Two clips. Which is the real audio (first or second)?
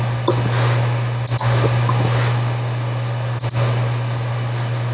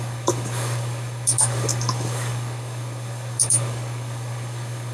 first